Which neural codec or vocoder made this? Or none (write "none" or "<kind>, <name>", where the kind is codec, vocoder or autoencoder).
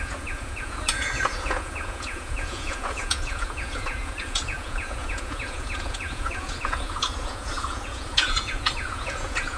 vocoder, Vocos